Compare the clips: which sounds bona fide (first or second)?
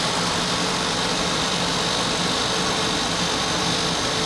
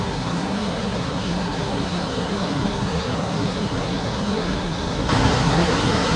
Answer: first